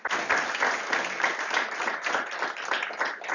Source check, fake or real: real